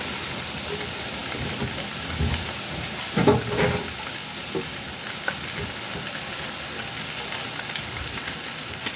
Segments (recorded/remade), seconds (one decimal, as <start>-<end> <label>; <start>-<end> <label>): 0.0-9.0 recorded

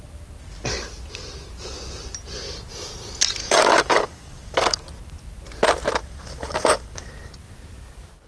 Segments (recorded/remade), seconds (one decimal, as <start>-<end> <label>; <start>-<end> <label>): 0.0-3.4 recorded; 3.4-4.8 remade; 4.8-6.0 recorded; 6.0-7.1 remade; 7.1-8.3 recorded

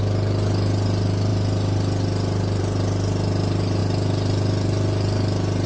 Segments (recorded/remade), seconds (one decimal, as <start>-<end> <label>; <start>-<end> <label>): 0.0-5.7 recorded